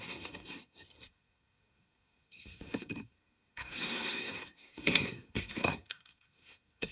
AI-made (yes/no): yes